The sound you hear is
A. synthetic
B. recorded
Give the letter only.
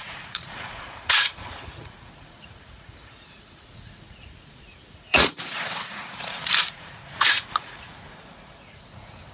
A